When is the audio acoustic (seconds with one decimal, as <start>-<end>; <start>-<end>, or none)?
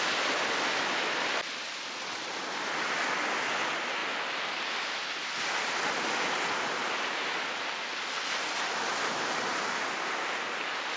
0.0-11.0